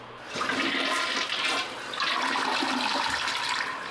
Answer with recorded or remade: recorded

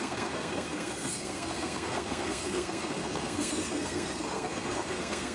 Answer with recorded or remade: remade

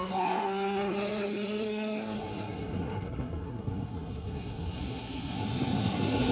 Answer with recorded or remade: remade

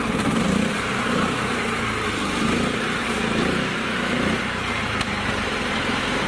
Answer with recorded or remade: remade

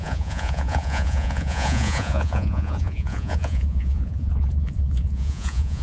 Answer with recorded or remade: remade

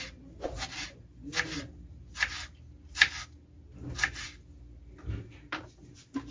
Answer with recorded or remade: recorded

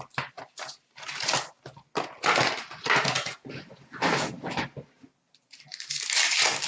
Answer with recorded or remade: recorded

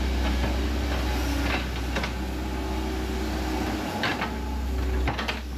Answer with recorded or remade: recorded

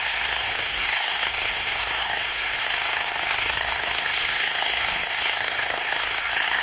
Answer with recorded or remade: remade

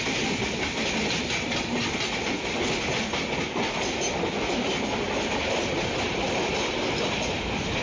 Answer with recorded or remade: recorded